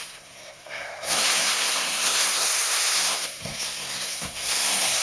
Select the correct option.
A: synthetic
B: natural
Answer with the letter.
A